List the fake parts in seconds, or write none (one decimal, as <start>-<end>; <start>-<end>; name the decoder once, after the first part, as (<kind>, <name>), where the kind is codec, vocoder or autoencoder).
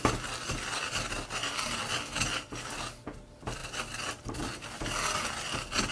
none